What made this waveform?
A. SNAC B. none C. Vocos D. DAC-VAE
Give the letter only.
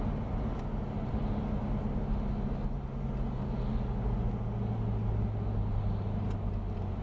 B